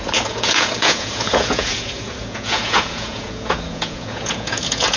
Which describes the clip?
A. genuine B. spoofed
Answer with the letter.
B